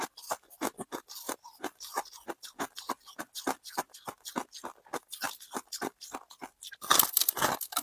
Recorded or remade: recorded